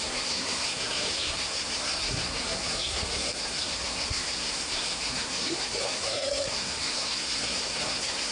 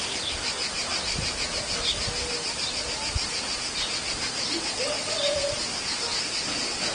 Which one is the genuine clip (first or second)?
second